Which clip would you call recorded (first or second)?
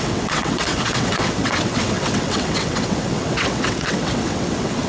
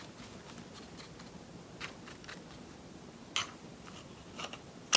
second